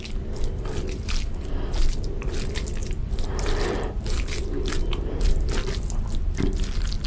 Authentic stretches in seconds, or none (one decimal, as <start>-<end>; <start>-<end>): 0.0-2.8; 4.7-7.1